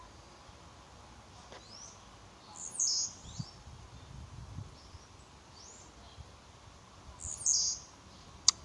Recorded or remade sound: recorded